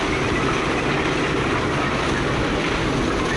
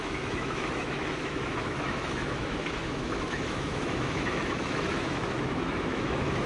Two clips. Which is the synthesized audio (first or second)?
second